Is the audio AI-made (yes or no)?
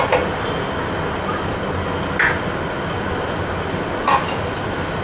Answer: no